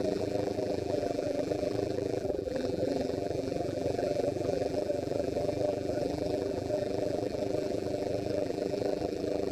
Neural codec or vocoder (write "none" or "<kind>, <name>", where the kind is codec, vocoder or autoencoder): vocoder, BigVGAN v2